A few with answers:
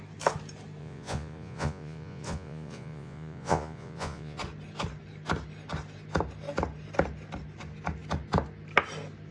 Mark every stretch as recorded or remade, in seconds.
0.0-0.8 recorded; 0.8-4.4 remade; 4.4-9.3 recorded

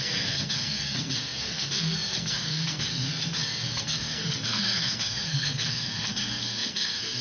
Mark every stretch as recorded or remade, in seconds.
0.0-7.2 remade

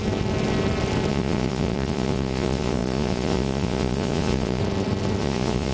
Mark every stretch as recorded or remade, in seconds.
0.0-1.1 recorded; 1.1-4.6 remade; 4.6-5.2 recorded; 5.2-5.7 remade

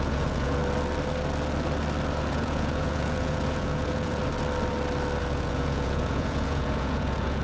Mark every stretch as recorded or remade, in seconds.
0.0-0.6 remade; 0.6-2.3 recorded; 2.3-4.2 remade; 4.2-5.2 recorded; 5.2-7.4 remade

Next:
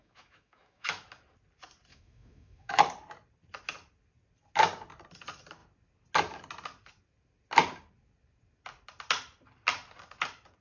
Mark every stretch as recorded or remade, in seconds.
0.0-1.0 remade; 1.0-1.9 recorded; 1.9-2.8 remade; 2.8-10.6 recorded

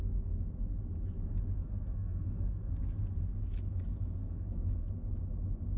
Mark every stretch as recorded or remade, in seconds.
0.0-1.6 recorded; 1.6-2.7 remade; 2.7-4.2 recorded; 4.2-4.9 remade; 4.9-5.8 recorded

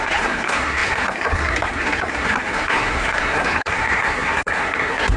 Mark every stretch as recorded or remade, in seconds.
0.0-5.2 remade